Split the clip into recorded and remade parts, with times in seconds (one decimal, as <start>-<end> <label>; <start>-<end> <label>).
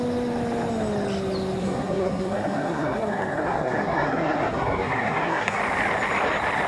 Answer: 0.0-1.6 recorded; 1.6-5.6 remade; 5.6-6.7 recorded